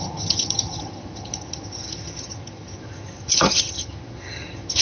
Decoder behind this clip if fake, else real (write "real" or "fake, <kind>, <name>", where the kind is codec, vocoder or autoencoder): fake, vocoder, HiFi-GAN